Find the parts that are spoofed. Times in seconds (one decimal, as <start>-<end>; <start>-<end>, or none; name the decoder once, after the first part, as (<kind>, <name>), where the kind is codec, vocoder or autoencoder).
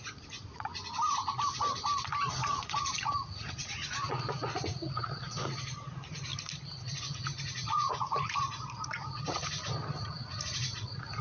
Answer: 0.0-0.7 (vocoder, Vocos); 2.3-6.3; 7.0-9.4; 10.0-11.2